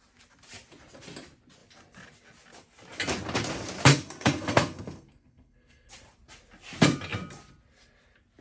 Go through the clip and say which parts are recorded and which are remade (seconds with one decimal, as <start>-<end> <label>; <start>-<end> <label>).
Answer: 0.0-3.9 recorded; 3.9-5.9 remade; 5.9-8.4 recorded